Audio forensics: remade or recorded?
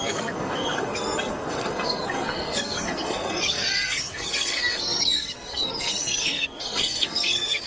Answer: remade